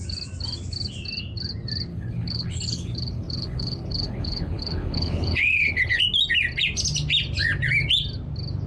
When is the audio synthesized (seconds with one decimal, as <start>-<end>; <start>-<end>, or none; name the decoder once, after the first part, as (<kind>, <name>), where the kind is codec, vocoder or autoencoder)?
1.9-6.0 (codec, HILCodec)